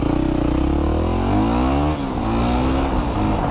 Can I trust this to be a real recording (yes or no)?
yes